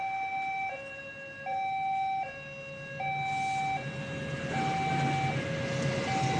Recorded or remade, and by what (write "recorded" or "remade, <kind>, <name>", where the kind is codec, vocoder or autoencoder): recorded